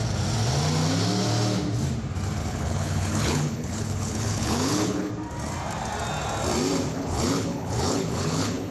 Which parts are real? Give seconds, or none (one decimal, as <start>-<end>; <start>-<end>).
0.0-2.4; 5.1-6.9